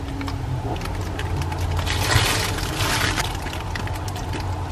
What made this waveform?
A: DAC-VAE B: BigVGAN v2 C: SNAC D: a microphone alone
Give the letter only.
D